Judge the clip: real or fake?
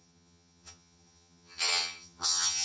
fake